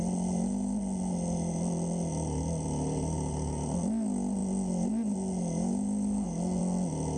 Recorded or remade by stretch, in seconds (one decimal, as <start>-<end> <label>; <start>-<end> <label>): 0.0-7.2 recorded